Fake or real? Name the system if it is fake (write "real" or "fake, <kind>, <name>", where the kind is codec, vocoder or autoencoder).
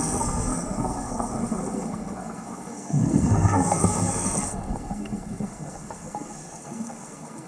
fake, codec, SNAC